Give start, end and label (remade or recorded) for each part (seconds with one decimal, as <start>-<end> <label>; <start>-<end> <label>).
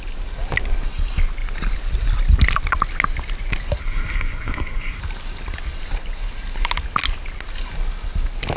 0.0-3.8 recorded; 3.8-5.0 remade; 5.0-8.6 recorded